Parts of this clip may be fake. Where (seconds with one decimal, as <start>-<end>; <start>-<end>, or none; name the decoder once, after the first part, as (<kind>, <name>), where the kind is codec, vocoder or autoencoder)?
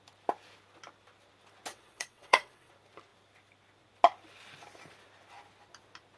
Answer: 1.7-2.7 (vocoder, WaveNeXt)